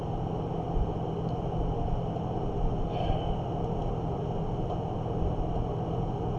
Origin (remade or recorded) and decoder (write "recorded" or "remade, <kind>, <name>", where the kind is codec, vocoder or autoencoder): recorded